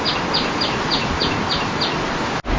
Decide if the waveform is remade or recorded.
recorded